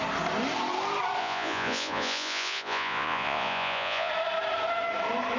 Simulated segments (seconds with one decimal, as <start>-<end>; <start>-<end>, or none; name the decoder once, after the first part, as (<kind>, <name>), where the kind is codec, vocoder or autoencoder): 1.2-4.1 (vocoder, Vocos)